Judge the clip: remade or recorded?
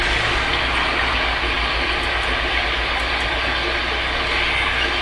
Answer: recorded